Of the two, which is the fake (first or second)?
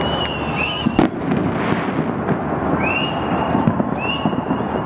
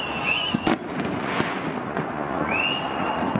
second